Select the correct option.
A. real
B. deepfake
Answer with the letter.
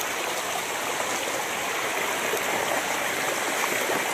A